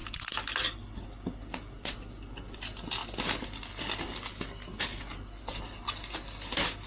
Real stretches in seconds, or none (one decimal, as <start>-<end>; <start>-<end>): 0.0-6.9